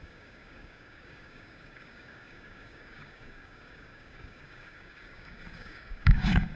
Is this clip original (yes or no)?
no